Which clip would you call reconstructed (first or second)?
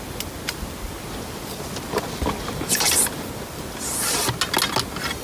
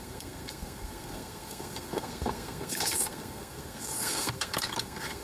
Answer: second